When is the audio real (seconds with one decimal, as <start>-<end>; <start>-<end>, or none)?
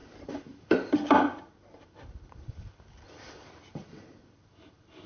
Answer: none